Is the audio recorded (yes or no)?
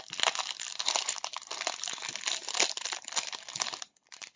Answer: yes